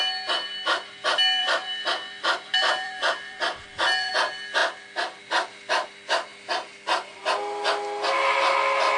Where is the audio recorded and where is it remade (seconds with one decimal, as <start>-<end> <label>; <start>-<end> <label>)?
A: 0.0-1.4 recorded; 1.4-4.1 remade; 4.1-9.0 recorded